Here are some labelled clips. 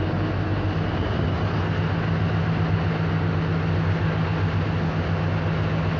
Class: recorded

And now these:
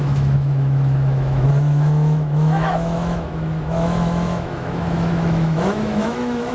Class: remade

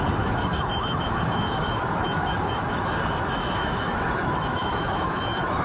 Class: remade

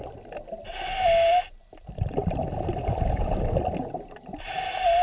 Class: recorded